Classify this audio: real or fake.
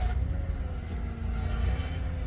real